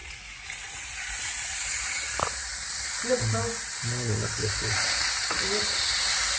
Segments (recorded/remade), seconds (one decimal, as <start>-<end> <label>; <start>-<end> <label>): 0.0-1.9 remade; 1.9-6.4 recorded